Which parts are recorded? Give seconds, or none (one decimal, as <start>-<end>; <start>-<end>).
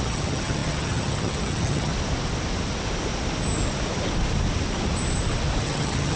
1.9-5.6